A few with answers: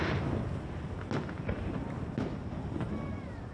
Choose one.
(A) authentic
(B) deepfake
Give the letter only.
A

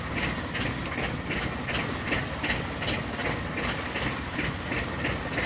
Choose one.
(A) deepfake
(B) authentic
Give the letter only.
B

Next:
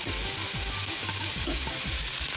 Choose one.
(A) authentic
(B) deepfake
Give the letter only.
A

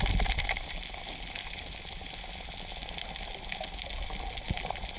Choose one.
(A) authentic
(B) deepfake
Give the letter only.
A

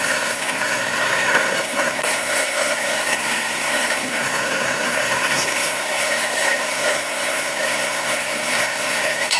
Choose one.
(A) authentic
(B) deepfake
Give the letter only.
B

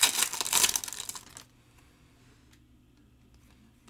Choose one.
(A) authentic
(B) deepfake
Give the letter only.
A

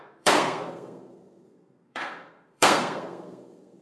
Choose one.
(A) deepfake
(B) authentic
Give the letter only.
A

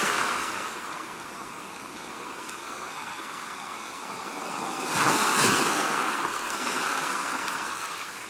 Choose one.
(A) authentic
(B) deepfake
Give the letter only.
B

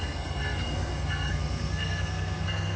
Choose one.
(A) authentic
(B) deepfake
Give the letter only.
B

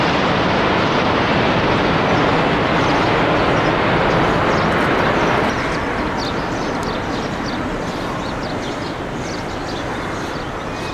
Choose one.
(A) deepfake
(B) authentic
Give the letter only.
B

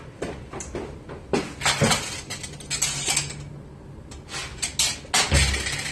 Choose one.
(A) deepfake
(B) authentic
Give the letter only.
B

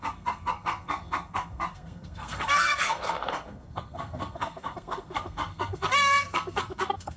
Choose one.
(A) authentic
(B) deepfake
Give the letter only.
B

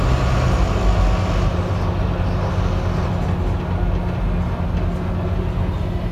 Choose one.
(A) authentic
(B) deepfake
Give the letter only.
A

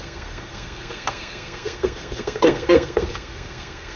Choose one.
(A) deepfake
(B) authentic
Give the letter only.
A